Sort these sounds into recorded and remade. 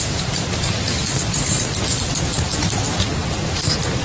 remade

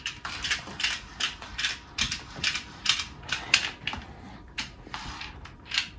remade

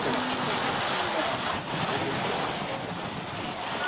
recorded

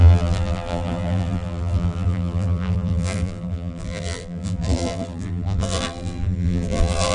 remade